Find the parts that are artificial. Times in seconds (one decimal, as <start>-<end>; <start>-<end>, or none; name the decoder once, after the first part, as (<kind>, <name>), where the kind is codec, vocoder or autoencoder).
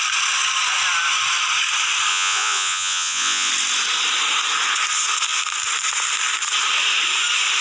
2.1-3.5 (vocoder, Vocos)